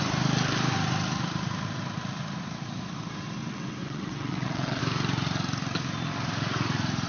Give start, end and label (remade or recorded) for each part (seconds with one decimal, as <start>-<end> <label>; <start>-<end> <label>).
0.0-3.4 recorded; 3.4-4.8 remade; 4.8-7.1 recorded